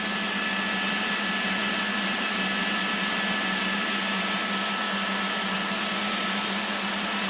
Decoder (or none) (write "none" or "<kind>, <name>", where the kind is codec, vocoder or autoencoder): none